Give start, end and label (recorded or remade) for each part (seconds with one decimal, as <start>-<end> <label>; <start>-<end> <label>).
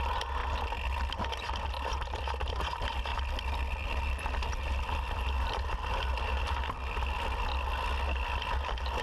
0.0-9.0 recorded